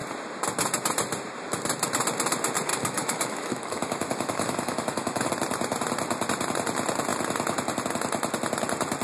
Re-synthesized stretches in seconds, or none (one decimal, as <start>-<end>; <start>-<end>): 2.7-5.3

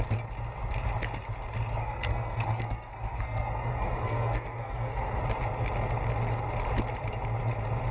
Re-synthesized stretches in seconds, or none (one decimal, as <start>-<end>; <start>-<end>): 1.8-5.2

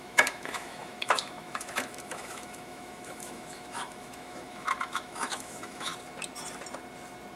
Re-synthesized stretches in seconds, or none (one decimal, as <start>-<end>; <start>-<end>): 0.0-5.9